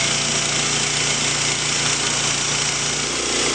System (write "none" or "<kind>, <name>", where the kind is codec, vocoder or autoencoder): none